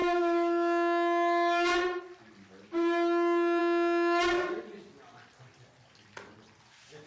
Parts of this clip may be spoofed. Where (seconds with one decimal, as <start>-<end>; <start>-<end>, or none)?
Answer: 0.0-2.0; 3.6-4.2